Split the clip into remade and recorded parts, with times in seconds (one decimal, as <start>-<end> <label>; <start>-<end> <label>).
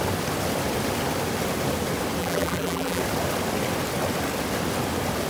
0.0-2.2 recorded; 2.2-3.0 remade; 3.0-5.3 recorded